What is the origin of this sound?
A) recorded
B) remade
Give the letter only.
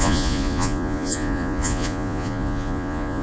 B